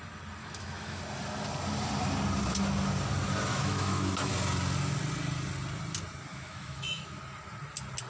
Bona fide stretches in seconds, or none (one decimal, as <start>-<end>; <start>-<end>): 0.0-0.4; 1.0-3.5; 4.3-6.3; 7.2-8.1